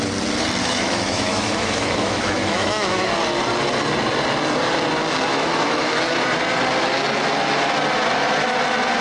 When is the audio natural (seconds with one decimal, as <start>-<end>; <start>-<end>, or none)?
0.0-0.6; 3.1-5.3; 6.0-9.0